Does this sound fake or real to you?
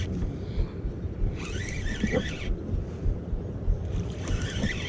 real